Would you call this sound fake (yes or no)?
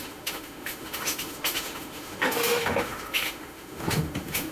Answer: yes